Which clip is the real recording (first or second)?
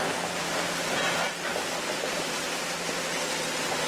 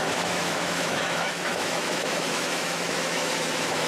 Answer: first